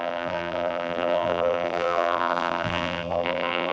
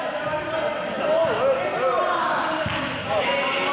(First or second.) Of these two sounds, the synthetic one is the first